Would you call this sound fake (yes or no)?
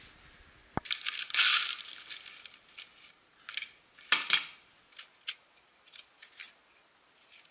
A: no